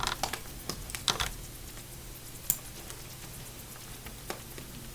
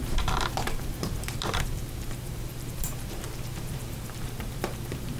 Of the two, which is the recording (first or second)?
first